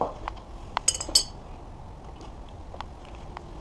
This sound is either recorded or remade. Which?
recorded